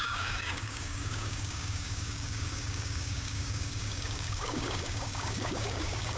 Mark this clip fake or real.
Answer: fake